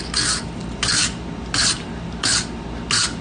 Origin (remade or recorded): recorded